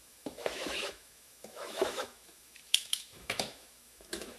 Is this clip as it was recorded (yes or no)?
no